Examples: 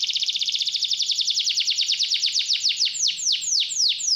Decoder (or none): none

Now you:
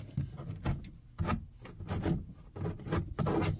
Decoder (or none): none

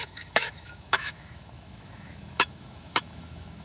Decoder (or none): autoencoder, DAC-VAE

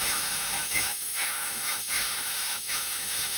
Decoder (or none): autoencoder, DAC-VAE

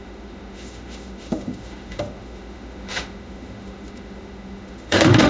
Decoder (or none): autoencoder, DAC-VAE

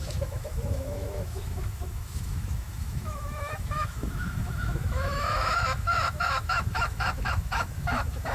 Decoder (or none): autoencoder, DAC-VAE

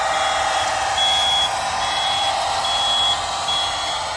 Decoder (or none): none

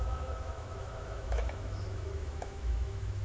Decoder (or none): autoencoder, DAC-VAE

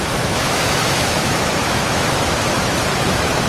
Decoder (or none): autoencoder, DAC-VAE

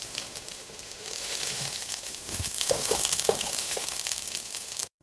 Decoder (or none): autoencoder, DAC-VAE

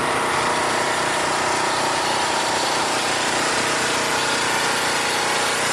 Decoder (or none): none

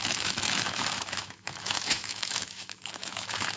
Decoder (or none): autoencoder, DAC-VAE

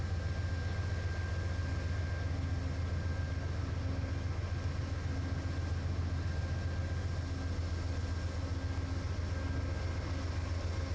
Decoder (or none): none